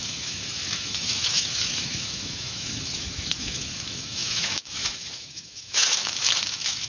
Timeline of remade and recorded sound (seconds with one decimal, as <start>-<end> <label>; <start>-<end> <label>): 0.0-6.9 remade